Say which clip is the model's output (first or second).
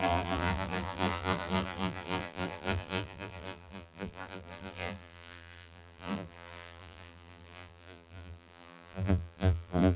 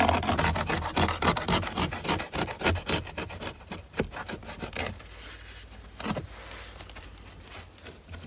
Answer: first